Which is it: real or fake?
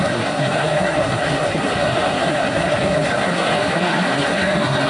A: fake